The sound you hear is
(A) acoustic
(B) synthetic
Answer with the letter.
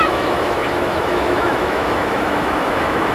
B